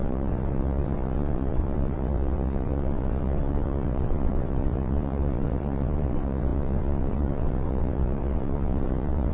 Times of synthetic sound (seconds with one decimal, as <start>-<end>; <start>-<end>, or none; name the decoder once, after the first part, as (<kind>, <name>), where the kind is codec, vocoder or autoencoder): 0.0-9.3 (vocoder, WaveNeXt)